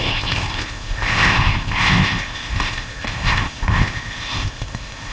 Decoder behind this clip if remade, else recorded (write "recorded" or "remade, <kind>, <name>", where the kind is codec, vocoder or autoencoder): remade, codec, ZipCodec